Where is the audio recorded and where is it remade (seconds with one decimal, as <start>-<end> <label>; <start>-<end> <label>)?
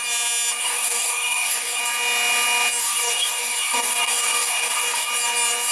0.0-0.6 recorded; 0.6-1.8 remade; 1.8-2.8 recorded; 2.8-5.1 remade; 5.1-5.7 recorded